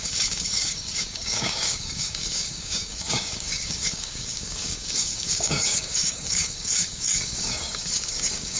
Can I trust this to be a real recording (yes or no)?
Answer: no